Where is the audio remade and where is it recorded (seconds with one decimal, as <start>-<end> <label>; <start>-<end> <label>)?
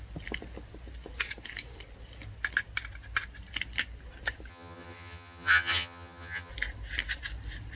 0.0-4.5 recorded; 4.5-6.5 remade; 6.5-7.8 recorded